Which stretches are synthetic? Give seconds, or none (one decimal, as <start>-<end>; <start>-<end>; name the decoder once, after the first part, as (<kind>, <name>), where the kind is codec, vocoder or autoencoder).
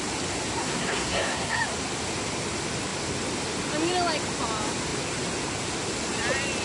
0.6-1.6 (codec, SNAC)